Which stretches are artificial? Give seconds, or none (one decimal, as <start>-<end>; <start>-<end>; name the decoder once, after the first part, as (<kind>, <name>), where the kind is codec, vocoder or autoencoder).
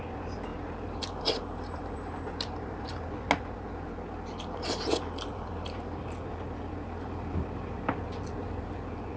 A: 0.5-3.1 (vocoder, BigVGAN v2)